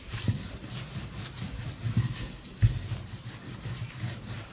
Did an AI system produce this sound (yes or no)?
no